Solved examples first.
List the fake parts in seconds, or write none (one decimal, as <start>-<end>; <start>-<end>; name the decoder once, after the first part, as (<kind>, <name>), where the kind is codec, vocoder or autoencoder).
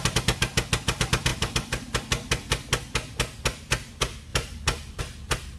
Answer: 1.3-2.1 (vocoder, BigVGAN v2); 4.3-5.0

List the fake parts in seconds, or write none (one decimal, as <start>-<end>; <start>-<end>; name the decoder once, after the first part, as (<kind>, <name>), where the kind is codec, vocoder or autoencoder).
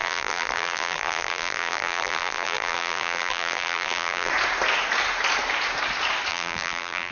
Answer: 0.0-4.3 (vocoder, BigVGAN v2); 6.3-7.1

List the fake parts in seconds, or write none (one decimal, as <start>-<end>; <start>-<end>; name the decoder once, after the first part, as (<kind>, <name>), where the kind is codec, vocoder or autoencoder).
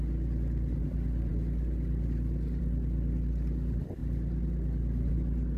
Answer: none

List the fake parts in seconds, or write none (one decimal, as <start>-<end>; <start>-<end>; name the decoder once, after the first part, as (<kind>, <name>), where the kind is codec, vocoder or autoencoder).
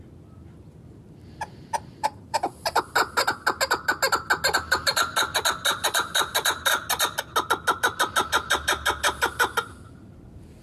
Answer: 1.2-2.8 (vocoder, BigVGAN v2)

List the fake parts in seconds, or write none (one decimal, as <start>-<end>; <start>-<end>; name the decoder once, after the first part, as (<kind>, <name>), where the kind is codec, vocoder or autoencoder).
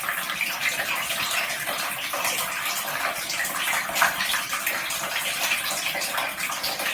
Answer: 0.0-6.9 (vocoder, BigVGAN v2)